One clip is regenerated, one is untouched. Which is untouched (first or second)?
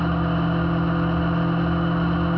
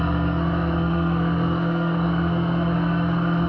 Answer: first